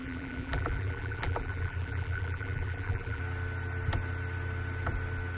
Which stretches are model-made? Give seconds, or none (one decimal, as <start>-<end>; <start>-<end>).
0.0-3.2